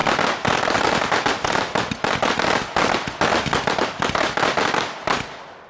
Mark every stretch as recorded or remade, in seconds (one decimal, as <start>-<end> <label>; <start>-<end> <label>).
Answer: 0.0-5.7 recorded